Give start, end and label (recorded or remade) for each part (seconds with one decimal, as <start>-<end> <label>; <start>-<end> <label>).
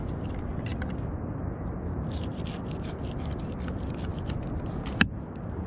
0.0-5.7 recorded